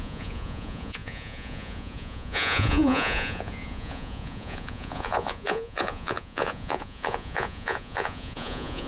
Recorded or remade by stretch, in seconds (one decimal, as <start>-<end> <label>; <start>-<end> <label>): 0.0-8.9 remade